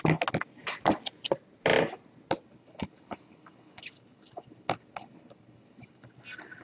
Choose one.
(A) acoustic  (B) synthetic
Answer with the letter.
A